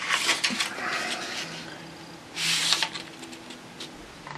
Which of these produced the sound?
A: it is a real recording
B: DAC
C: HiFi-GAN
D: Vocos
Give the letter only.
A